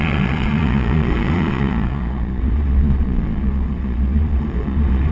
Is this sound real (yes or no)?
no